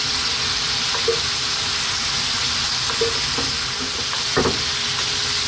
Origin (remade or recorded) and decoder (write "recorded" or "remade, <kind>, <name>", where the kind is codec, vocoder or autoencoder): recorded